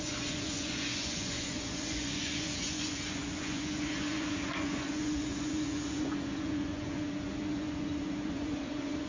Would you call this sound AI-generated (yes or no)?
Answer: yes